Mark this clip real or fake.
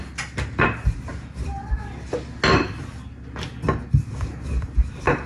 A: real